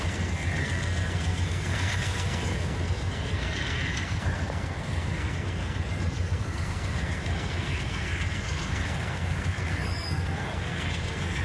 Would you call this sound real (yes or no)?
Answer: no